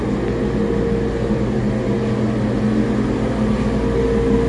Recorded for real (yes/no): yes